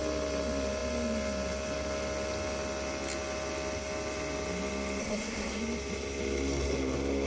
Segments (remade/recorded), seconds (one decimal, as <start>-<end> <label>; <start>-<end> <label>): 0.0-5.0 recorded; 5.0-5.6 remade; 5.6-7.3 recorded